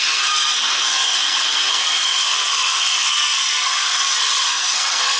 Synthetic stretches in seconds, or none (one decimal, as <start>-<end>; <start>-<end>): 0.0-5.2